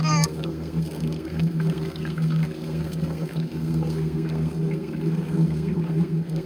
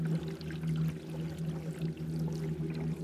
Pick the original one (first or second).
second